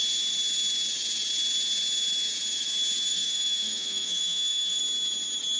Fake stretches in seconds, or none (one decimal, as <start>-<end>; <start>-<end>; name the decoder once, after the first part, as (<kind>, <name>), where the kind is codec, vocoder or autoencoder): 3.1-4.8 (autoencoder, DAC-VAE)